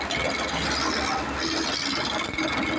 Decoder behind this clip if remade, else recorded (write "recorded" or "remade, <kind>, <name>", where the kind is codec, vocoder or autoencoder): recorded